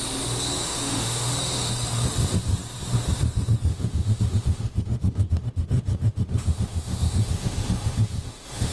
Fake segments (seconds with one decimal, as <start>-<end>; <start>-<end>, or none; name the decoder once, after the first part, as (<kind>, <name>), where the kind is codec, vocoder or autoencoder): 0.6-1.3 (autoencoder, DAC-VAE); 3.7-8.7